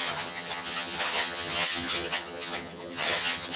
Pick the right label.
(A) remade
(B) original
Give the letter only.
A